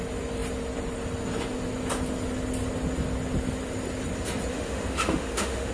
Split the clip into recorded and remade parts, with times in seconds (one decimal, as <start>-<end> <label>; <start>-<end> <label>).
0.0-4.5 recorded; 4.5-5.7 remade